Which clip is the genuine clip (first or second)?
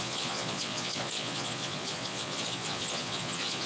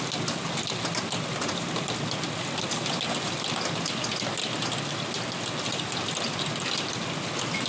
second